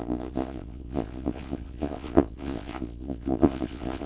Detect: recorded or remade remade